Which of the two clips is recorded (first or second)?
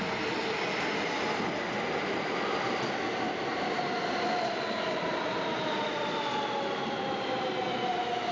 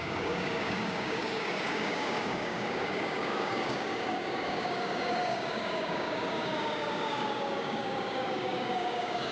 first